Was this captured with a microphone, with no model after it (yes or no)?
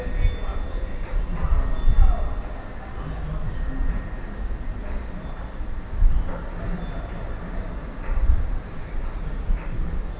yes